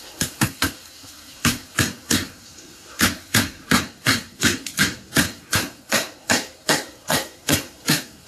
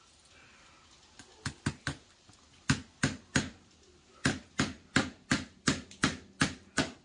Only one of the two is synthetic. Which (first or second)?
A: first